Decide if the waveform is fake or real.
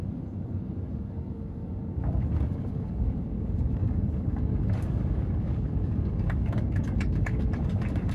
fake